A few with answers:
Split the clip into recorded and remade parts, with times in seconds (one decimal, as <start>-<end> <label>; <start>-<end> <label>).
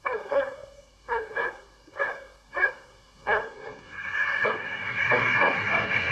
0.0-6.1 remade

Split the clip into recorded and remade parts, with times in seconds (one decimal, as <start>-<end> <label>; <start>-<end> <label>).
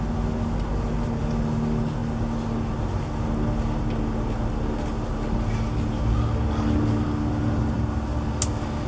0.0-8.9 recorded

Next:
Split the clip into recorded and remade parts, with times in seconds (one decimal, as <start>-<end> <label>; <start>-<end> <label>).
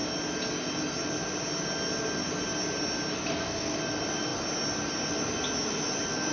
0.0-3.3 recorded; 3.3-3.8 remade; 3.8-6.3 recorded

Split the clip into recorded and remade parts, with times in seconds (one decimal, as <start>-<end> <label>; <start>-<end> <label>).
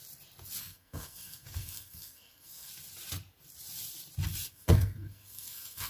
0.0-0.6 recorded; 0.6-2.7 remade; 2.7-4.5 recorded; 4.5-5.9 remade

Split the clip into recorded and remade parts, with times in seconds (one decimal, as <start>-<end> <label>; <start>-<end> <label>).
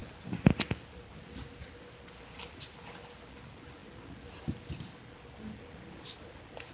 0.0-6.7 recorded